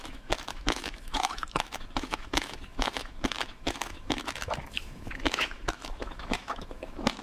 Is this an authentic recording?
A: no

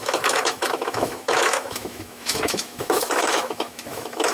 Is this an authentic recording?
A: no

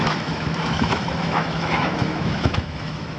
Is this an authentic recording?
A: no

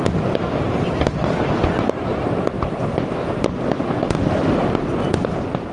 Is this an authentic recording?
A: yes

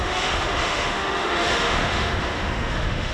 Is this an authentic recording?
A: no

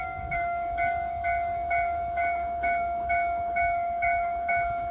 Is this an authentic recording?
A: no